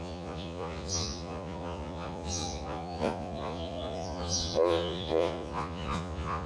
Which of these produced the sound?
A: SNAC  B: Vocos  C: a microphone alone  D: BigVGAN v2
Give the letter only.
B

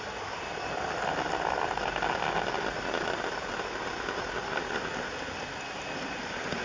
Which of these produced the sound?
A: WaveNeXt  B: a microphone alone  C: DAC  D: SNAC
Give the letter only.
B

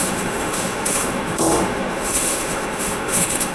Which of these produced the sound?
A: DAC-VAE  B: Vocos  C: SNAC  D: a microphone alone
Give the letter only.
A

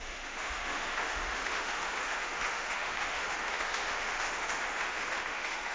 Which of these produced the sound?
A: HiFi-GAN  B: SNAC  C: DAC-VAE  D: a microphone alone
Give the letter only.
C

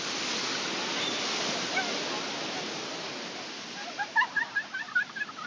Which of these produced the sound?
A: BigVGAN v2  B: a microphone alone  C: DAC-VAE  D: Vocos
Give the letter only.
B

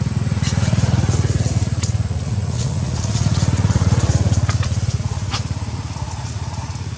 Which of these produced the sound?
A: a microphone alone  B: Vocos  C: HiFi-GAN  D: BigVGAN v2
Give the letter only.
B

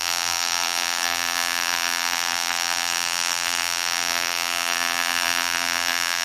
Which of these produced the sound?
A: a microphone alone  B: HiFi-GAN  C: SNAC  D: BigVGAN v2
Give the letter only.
D